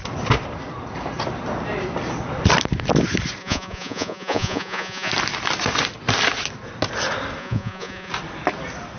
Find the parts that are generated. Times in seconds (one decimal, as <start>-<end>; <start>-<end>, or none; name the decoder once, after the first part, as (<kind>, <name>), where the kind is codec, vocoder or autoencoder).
3.4-5.1 (vocoder, Vocos); 7.4-8.1